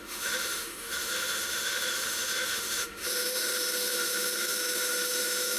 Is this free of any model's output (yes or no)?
no